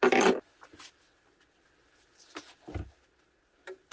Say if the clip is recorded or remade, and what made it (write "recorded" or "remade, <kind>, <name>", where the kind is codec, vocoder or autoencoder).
recorded